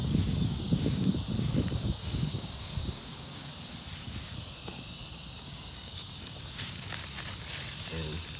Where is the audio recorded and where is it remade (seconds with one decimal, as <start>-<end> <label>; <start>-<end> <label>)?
0.0-3.5 remade; 3.5-5.1 recorded; 5.1-7.2 remade; 7.2-8.4 recorded